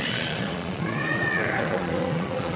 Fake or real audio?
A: fake